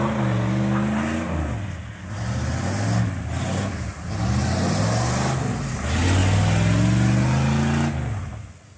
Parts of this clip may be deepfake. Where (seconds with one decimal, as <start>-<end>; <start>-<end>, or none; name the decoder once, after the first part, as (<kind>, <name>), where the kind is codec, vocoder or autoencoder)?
none